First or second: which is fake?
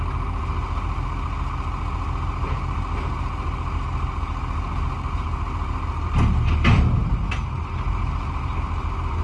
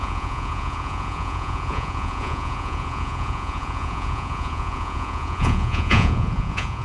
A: second